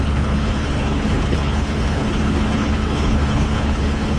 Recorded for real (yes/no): no